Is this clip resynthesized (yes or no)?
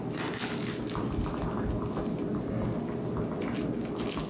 no